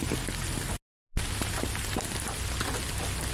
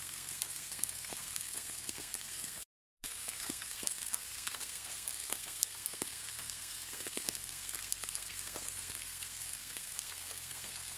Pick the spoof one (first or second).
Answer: second